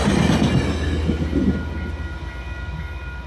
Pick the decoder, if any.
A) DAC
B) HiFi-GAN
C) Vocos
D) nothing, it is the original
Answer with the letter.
D